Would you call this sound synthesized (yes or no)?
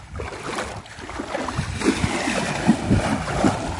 no